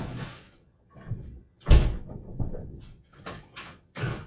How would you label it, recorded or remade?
remade